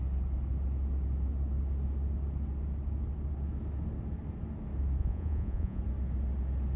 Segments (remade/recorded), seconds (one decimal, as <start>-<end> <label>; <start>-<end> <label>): 0.0-5.0 recorded; 5.0-5.8 remade; 5.8-6.8 recorded